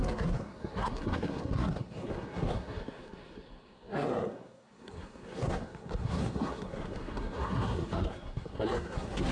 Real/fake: fake